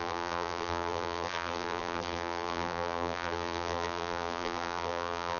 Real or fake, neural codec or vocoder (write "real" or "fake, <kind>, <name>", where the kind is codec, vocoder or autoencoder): fake, vocoder, BigVGAN v2